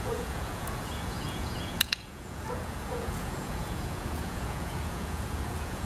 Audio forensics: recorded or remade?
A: remade